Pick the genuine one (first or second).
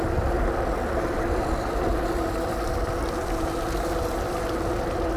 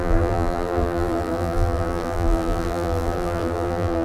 first